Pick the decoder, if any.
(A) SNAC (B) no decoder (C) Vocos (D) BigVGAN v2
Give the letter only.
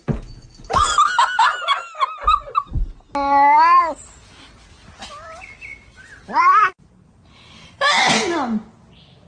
B